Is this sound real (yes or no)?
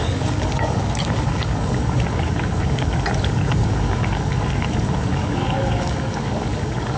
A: no